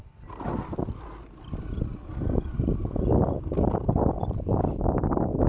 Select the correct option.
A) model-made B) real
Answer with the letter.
B